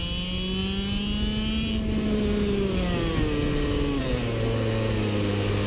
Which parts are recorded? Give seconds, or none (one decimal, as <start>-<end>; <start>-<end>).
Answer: 0.0-5.7